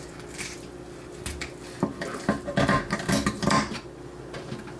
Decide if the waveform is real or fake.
real